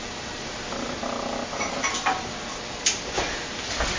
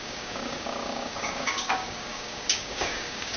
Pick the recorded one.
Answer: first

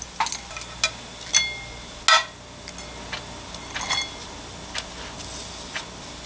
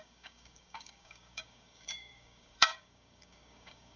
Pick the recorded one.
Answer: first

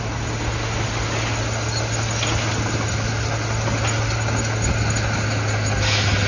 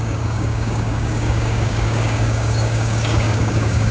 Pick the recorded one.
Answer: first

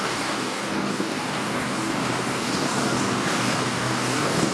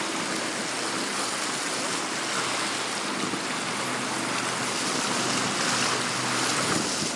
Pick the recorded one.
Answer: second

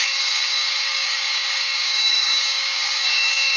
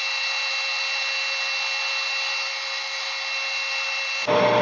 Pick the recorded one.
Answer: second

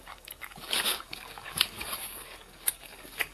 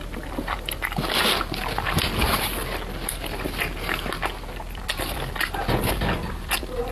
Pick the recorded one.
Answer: second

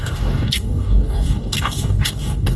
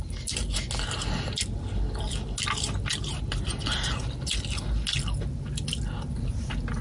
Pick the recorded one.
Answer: second